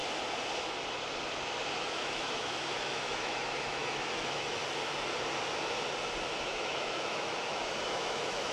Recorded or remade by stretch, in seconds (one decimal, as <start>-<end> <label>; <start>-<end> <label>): 0.0-1.8 recorded; 1.8-4.6 remade; 4.6-6.4 recorded; 6.4-8.5 remade